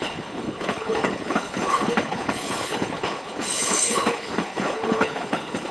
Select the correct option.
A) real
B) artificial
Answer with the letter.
B